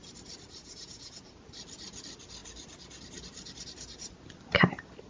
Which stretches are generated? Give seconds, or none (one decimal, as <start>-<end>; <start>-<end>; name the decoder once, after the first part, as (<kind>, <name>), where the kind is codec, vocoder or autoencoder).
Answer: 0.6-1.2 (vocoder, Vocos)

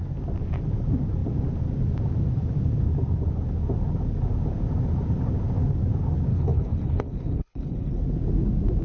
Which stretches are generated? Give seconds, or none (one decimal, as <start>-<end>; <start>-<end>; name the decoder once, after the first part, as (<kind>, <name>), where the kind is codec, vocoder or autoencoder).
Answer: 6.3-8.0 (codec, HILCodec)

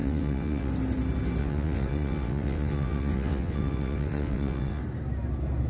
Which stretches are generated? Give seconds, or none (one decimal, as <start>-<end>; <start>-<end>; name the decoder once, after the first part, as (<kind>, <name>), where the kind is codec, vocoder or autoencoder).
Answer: 0.0-0.7 (vocoder, WaveNeXt); 1.4-4.8

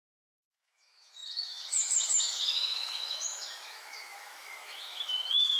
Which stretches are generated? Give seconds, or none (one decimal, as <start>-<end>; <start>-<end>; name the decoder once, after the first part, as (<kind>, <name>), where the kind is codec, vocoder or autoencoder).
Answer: 0.0-5.6 (autoencoder, DAC-VAE)